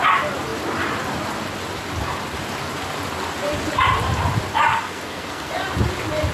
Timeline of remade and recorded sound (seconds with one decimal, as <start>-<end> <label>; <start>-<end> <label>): 0.0-4.7 recorded; 4.7-5.5 remade; 5.5-6.3 recorded

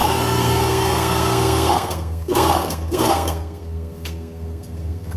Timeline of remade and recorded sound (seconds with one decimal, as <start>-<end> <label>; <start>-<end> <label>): 0.0-5.2 remade